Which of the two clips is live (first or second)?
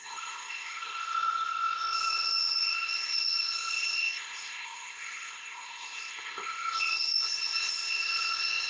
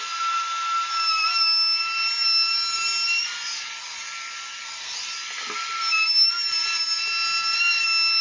second